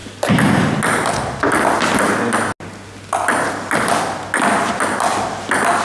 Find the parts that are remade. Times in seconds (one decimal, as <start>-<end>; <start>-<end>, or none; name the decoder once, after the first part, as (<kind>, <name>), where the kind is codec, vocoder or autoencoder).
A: none